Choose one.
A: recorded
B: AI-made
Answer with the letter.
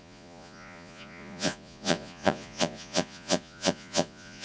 B